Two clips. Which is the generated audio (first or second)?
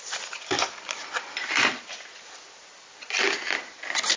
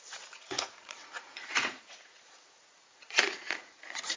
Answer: second